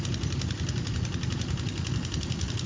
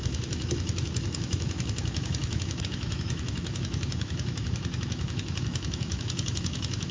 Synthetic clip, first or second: second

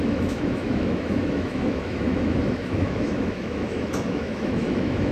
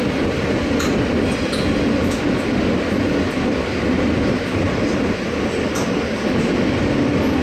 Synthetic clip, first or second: first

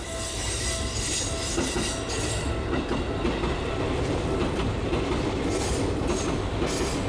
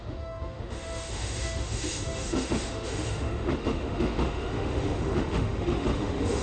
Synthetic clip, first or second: second